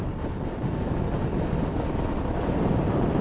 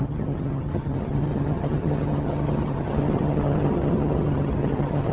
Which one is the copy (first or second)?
second